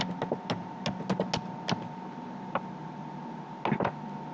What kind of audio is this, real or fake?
real